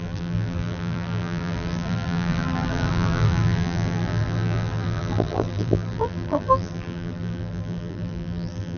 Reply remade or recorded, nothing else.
remade